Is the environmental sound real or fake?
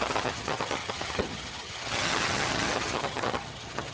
fake